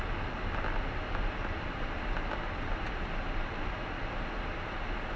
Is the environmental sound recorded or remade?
recorded